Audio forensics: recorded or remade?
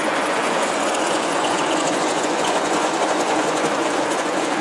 remade